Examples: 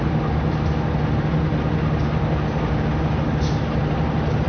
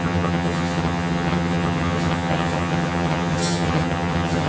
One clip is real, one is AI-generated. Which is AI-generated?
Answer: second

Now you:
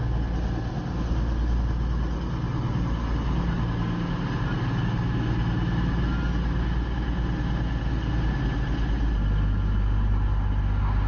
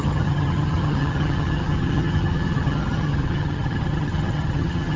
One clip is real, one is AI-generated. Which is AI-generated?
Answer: second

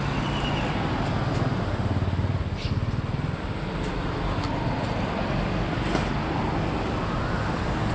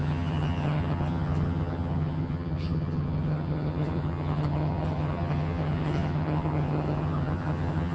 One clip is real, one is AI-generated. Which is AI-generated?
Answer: second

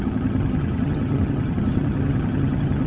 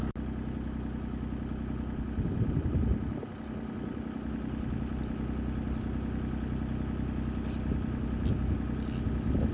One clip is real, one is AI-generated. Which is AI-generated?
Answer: first